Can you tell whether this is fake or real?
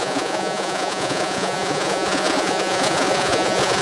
fake